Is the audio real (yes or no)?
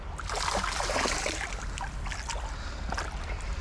yes